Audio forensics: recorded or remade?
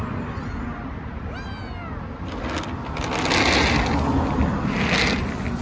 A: recorded